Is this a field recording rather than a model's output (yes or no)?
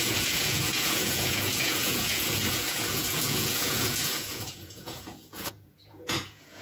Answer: no